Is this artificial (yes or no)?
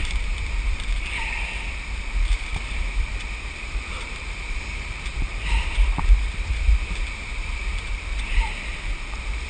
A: yes